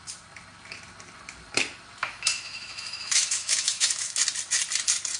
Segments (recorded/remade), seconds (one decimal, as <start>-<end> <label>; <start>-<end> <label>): 0.0-2.0 recorded; 2.0-4.2 remade; 4.2-5.2 recorded